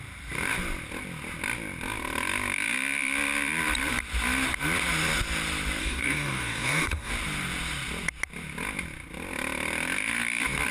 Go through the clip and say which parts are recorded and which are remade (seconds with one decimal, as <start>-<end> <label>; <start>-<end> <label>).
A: 0.0-5.8 recorded; 5.8-7.1 remade; 7.1-10.7 recorded